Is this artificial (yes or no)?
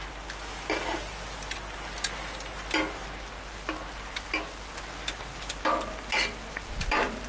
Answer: no